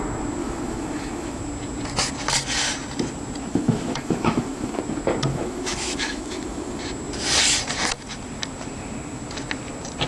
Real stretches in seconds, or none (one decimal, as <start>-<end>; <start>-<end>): 0.0-0.4; 1.4-3.5; 4.8-5.3; 6.8-10.1